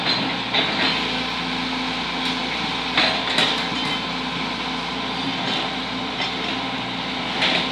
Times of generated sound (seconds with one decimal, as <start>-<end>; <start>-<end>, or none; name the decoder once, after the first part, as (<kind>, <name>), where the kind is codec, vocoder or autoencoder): none